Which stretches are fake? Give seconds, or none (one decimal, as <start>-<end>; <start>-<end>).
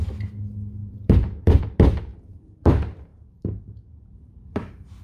0.8-1.6; 2.1-2.7; 3.1-5.0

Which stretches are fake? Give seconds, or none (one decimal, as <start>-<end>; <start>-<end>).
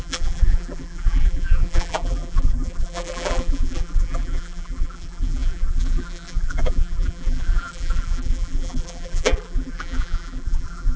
0.0-11.0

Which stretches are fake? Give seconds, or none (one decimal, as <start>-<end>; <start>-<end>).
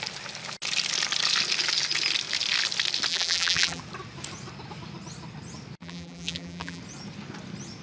3.1-3.8; 5.8-6.8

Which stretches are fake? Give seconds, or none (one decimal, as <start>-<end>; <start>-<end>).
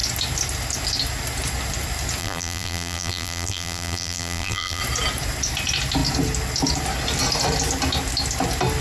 2.2-4.8